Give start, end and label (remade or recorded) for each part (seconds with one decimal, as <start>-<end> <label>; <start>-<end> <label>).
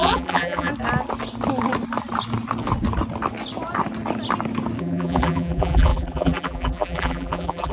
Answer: 0.0-0.7 remade; 0.7-4.8 recorded; 4.8-7.7 remade